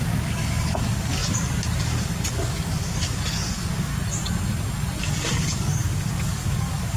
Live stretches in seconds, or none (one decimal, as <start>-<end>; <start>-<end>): 1.2-1.8; 3.9-5.3